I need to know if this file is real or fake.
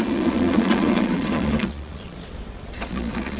fake